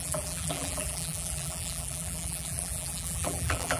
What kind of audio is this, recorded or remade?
remade